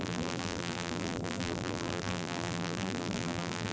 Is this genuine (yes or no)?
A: no